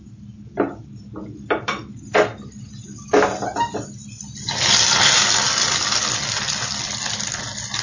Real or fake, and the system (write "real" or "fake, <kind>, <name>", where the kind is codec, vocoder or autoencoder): real